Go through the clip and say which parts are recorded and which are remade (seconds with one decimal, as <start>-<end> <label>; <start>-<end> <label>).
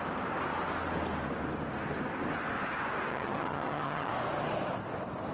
0.0-3.1 recorded; 3.1-4.1 remade; 4.1-5.3 recorded